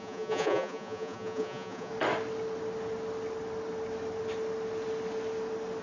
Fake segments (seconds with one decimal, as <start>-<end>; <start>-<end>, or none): 0.0-1.9